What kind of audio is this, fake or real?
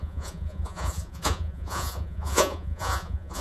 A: fake